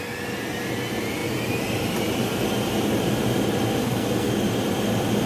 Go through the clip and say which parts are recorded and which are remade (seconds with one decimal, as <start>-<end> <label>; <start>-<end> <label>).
0.0-3.8 recorded; 3.8-4.3 remade; 4.3-5.3 recorded